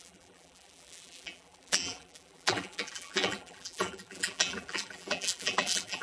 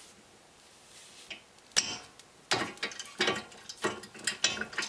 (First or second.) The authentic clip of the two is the second